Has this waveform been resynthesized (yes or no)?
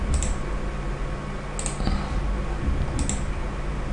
no